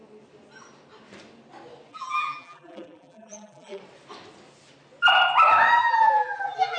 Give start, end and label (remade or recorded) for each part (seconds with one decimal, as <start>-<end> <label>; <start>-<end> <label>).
0.0-1.9 recorded; 1.9-3.8 remade; 3.8-5.8 recorded; 5.8-6.8 remade